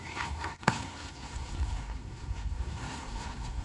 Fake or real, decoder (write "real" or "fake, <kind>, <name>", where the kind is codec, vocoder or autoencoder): fake, codec, SNAC